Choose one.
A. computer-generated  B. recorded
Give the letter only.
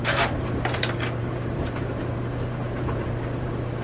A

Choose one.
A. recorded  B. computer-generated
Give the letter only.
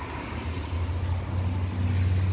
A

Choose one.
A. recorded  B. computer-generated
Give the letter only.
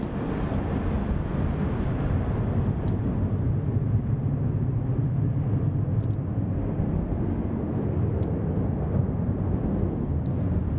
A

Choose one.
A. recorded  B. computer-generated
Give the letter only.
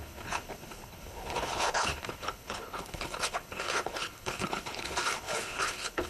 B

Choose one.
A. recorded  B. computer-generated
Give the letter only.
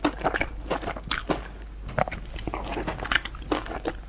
A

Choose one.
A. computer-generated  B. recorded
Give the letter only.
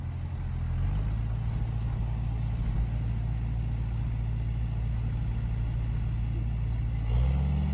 B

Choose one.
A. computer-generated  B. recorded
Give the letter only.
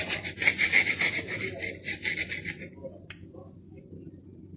B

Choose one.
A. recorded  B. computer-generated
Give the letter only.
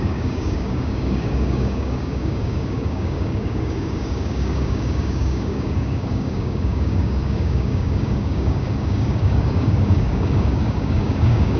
B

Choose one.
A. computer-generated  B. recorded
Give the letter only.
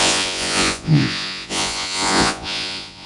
A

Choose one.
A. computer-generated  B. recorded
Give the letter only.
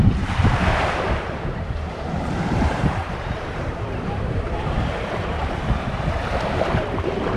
A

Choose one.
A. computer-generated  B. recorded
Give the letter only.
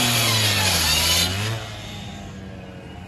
B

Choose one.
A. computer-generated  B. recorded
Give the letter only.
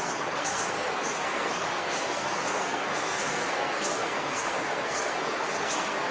A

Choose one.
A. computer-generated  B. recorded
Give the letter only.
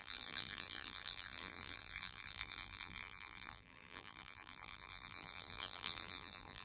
A